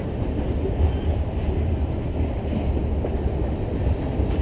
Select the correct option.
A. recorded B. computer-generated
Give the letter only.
A